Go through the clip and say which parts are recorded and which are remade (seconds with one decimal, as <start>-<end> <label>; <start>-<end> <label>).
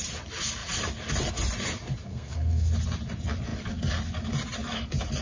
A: 0.0-2.0 recorded; 2.0-2.7 remade; 2.7-5.2 recorded